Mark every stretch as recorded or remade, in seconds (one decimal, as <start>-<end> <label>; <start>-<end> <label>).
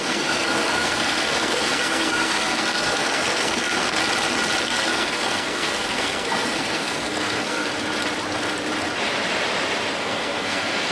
0.0-4.0 remade; 4.0-4.6 recorded; 4.6-7.7 remade; 7.7-10.0 recorded; 10.0-10.9 remade